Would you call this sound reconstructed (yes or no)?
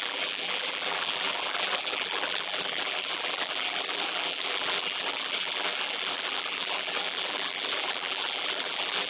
yes